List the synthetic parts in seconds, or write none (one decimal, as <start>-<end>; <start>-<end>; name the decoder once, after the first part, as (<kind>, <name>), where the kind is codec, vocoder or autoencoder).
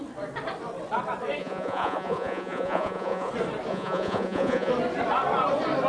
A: 1.4-3.3 (vocoder, Vocos); 3.7-4.7